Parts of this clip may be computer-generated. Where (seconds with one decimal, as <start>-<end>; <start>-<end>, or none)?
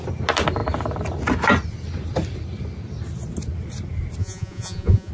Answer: 4.2-5.1